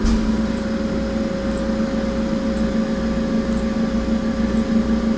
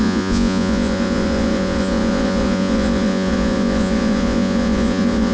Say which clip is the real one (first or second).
first